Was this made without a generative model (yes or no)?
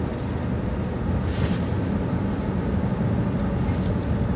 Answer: yes